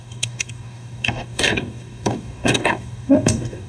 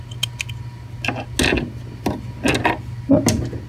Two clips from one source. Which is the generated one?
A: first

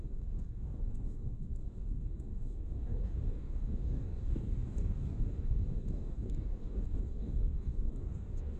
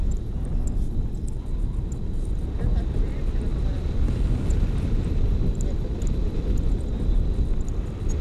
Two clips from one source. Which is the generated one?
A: first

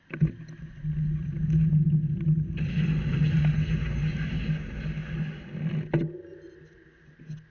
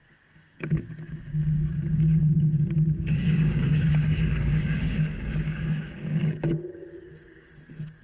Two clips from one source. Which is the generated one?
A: second